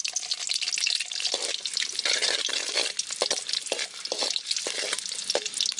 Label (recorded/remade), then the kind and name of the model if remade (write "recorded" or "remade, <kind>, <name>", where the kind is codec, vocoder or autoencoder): recorded